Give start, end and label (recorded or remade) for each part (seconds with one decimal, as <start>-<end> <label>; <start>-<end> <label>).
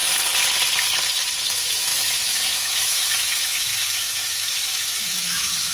0.0-1.4 recorded; 1.4-5.7 remade